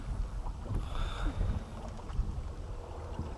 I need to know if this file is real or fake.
real